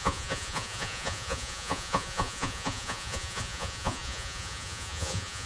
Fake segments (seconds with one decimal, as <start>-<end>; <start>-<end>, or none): 0.0-5.5